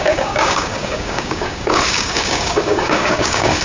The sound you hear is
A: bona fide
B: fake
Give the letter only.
B